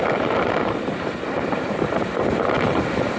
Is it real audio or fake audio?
real